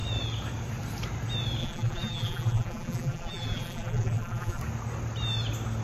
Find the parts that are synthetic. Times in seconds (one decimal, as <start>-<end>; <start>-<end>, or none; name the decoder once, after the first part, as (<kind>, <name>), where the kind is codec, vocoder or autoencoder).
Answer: 1.6-4.6 (vocoder, BigVGAN v2)

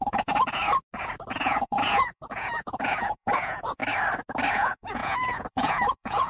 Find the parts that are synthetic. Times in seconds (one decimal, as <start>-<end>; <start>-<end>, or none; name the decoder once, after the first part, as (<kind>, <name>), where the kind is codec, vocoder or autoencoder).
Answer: 0.0-0.6 (vocoder, Vocos); 1.3-3.8; 4.5-6.3

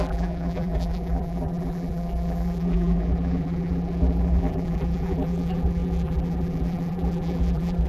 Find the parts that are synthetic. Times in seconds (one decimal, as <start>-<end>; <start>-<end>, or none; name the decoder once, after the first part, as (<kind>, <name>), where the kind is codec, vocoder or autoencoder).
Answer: 0.0-7.9 (vocoder, BigVGAN v2)

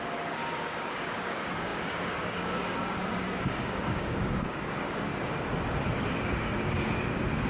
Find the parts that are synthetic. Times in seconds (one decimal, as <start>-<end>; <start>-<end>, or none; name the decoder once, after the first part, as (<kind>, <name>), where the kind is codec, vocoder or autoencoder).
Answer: 0.0-5.1 (codec, DAC); 6.0-7.5

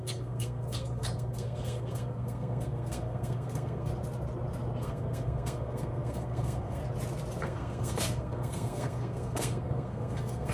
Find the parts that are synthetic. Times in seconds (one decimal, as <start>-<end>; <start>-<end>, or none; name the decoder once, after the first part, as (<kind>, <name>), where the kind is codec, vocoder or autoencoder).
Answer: 0.0-3.9 (codec, SNAC); 4.8-6.8; 7.4-10.5